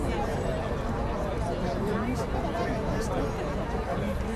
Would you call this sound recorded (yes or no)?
yes